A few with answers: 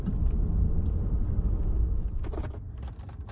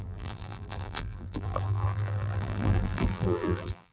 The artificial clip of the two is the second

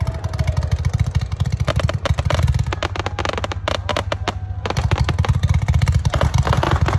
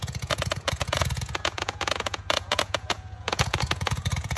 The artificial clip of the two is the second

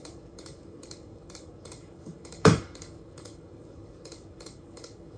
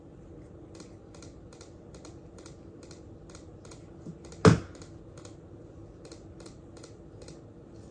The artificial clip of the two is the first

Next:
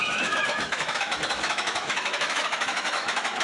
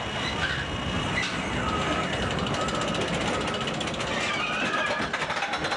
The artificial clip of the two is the first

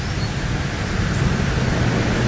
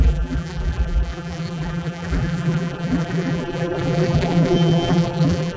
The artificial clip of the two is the second